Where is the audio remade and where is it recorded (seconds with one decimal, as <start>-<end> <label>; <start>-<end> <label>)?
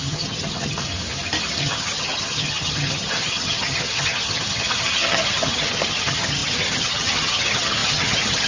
0.0-0.8 remade; 0.8-1.6 recorded; 1.6-8.5 remade